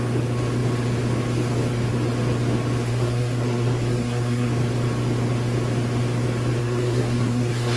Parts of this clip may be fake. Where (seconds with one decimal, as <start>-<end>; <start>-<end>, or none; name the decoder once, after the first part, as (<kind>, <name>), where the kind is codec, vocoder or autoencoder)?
2.9-4.5 (codec, SNAC); 6.6-7.8